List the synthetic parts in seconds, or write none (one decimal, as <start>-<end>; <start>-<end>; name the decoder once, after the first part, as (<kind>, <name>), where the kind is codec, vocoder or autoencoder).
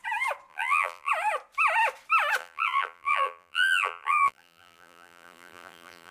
0.5-1.1 (vocoder, BigVGAN v2); 2.4-6.1